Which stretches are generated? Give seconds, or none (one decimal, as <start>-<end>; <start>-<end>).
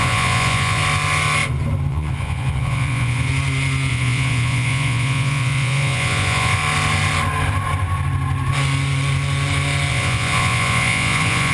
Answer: 0.0-0.8; 1.9-3.3; 3.9-6.6; 9.9-11.5